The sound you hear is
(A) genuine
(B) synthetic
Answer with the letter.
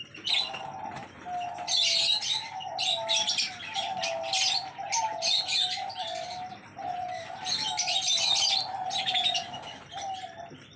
A